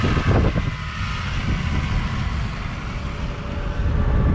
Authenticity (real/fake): real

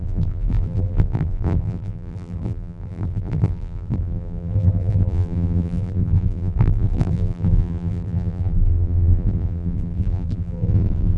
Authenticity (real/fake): fake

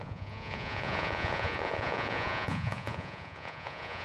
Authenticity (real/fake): fake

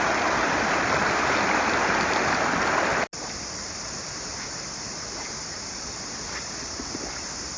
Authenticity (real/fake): real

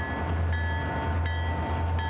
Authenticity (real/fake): real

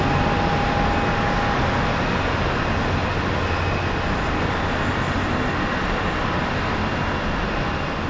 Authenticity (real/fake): real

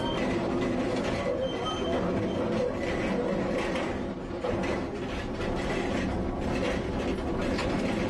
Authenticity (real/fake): real